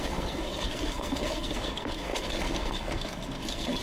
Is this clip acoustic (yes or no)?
no